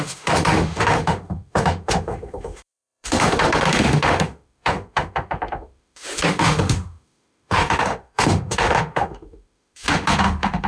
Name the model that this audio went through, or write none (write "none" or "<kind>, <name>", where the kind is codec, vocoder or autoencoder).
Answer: autoencoder, DAC-VAE